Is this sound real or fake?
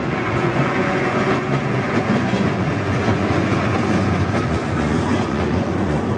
fake